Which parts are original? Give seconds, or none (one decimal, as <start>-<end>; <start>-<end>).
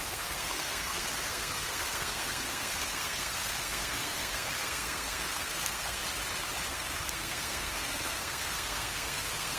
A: 6.0-6.7